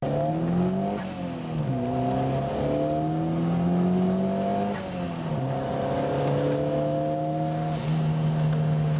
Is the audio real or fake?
real